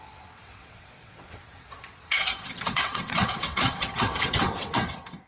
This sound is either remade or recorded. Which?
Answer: remade